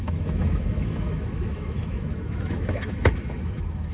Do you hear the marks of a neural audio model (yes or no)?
yes